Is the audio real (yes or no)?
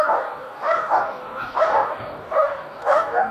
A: no